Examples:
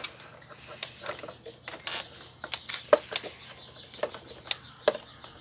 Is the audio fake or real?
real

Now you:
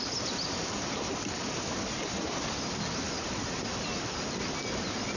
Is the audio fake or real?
real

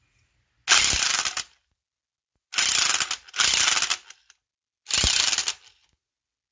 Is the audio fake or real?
real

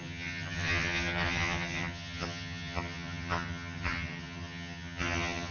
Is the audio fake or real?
fake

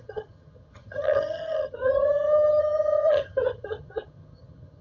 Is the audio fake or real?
fake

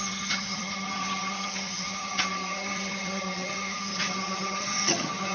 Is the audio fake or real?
fake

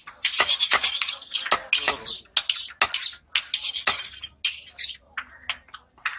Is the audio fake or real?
real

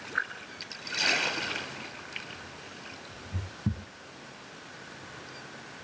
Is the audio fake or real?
real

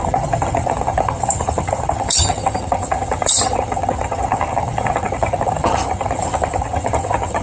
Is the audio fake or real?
fake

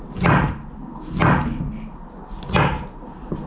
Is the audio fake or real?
real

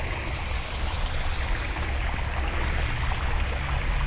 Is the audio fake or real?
real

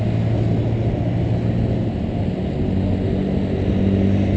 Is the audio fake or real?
real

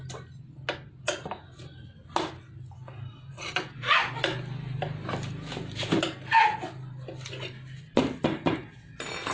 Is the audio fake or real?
real